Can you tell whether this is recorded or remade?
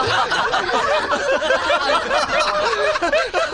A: recorded